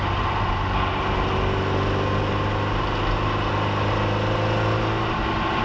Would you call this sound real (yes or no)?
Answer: yes